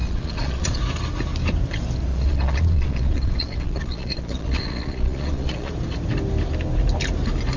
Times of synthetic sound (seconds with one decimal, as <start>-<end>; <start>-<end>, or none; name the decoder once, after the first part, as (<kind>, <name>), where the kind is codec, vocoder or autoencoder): 0.0-0.8 (vocoder, Vocos); 2.1-5.7